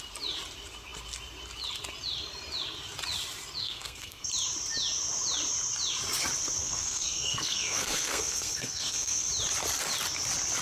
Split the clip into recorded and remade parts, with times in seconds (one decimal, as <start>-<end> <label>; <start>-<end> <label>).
0.0-3.6 recorded; 3.6-4.3 remade; 4.3-6.6 recorded; 6.6-9.3 remade; 9.3-10.6 recorded